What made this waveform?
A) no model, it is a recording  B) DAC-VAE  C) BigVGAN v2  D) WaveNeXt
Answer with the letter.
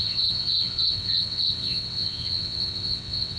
D